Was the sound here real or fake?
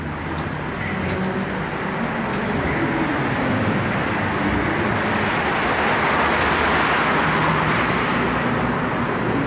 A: real